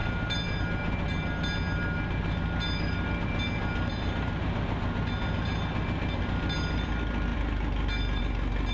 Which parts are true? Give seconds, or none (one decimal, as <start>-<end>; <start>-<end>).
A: 0.0-8.7